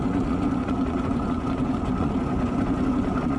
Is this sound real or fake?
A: fake